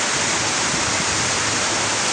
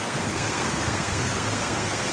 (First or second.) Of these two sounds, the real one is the first